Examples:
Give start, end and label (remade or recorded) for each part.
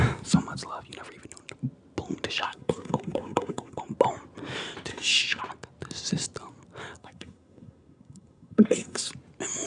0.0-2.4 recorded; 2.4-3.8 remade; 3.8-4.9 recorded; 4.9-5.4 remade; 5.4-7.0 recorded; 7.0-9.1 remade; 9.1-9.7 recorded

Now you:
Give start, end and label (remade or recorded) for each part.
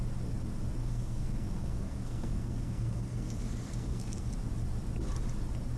0.0-0.8 recorded; 0.8-4.3 remade; 4.3-5.8 recorded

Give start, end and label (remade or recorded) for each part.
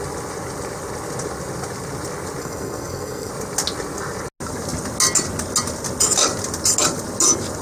0.0-2.4 recorded; 2.4-3.3 remade; 3.3-7.6 recorded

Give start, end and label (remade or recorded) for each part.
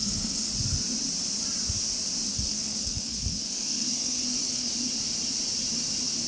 0.0-0.5 remade; 0.5-2.3 recorded; 2.3-4.7 remade; 4.7-6.3 recorded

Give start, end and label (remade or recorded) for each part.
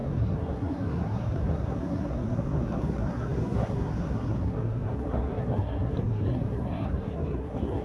0.0-7.8 remade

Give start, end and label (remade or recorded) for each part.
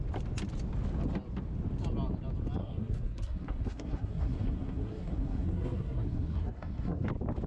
0.0-2.6 recorded; 2.6-7.1 remade; 7.1-7.5 recorded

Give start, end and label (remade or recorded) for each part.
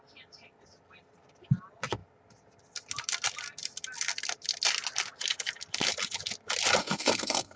0.0-6.8 recorded; 6.8-7.6 remade